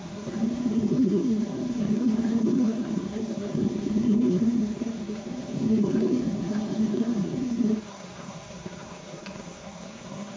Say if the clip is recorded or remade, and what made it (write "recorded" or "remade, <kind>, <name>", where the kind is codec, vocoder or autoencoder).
remade, codec, SNAC